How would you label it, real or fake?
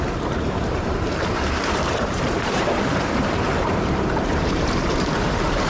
fake